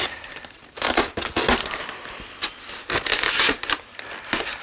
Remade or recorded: recorded